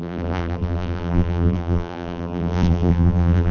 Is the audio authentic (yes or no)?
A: no